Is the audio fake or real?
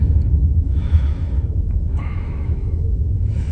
fake